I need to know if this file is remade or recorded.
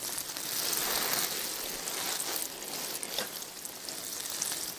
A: recorded